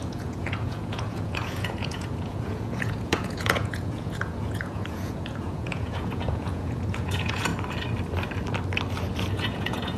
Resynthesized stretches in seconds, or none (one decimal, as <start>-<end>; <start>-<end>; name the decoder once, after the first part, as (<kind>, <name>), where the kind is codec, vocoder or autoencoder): 0.0-7.5 (vocoder, Vocos); 9.3-10.0